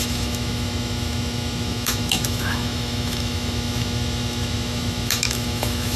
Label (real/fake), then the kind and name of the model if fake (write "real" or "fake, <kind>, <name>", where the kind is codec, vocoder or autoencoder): fake, autoencoder, DAC-VAE